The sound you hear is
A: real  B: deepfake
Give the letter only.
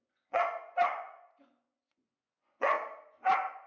B